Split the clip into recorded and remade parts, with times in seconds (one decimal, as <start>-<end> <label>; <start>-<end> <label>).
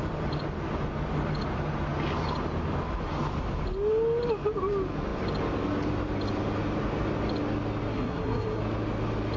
0.0-7.9 recorded; 7.9-8.6 remade; 8.6-9.4 recorded